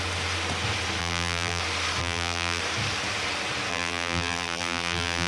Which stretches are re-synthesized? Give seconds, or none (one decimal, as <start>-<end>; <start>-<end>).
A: 1.0-1.6; 2.0-2.6; 3.7-5.3